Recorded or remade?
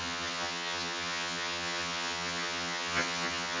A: remade